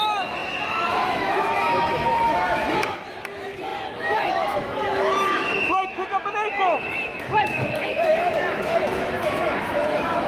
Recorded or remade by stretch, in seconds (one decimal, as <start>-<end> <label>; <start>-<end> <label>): 0.0-10.3 remade